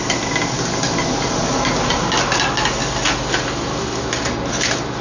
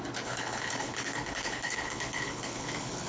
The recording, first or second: first